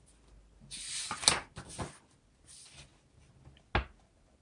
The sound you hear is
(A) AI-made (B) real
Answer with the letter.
B